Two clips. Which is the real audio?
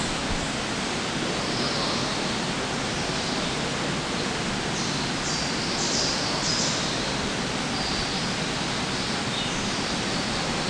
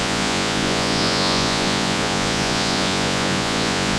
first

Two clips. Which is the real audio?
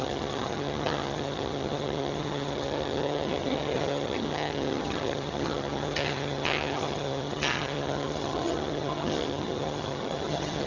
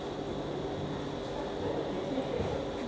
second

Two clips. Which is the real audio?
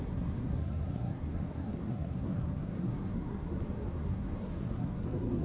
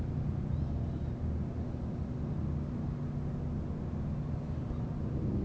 second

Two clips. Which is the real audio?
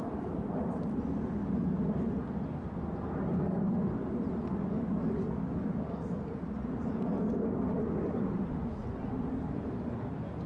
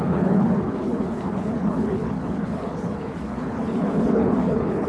first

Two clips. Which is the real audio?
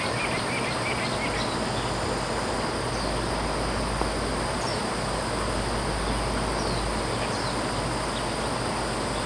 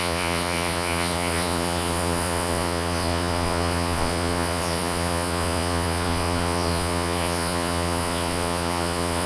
first